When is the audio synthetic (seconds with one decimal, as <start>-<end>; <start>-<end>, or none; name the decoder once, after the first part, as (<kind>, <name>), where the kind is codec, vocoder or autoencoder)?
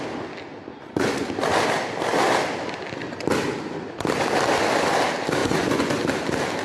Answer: 0.7-1.3 (vocoder, Vocos); 5.4-5.9